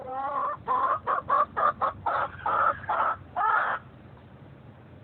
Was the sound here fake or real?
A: fake